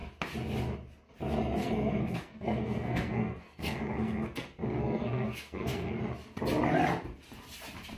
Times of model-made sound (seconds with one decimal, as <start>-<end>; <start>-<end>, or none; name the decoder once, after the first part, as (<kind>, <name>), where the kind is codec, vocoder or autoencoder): 1.6-6.0 (codec, SNAC)